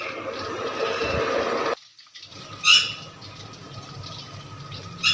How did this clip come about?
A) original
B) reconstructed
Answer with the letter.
A